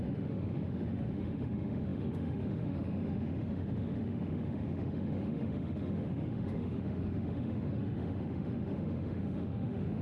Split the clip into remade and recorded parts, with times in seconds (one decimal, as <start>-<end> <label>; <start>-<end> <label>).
0.0-10.0 remade